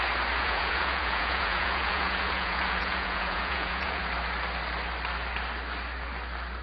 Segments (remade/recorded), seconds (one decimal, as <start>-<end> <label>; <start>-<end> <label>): 0.0-0.4 recorded; 0.4-4.0 remade; 4.0-6.6 recorded